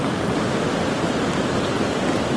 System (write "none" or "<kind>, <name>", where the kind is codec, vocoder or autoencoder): none